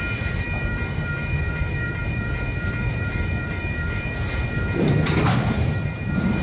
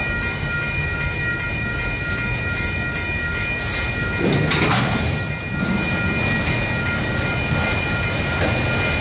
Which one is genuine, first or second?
second